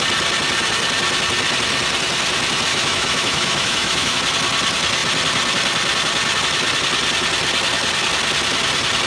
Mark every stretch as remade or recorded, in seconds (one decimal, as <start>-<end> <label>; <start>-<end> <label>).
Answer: 0.0-2.7 recorded; 2.7-4.2 remade; 4.2-9.1 recorded